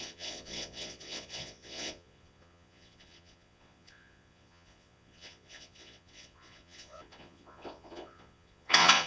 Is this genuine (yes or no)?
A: no